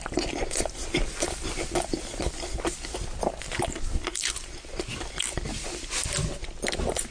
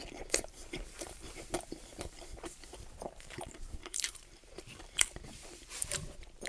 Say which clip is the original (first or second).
first